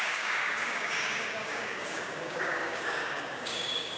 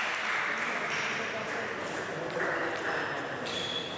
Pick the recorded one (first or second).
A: second